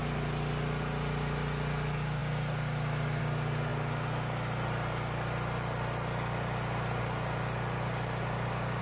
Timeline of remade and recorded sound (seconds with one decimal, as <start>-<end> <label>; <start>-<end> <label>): 0.0-8.8 recorded